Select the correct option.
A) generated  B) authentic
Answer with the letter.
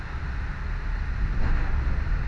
B